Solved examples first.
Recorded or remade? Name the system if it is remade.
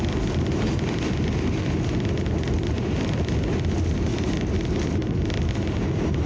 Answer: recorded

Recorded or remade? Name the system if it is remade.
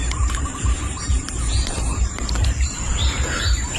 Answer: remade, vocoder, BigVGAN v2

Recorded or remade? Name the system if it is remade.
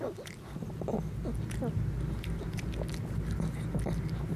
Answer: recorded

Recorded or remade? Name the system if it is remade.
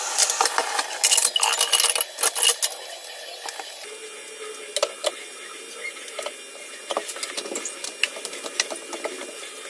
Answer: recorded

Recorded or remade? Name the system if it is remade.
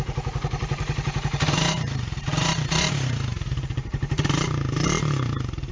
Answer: remade, vocoder, BigVGAN v2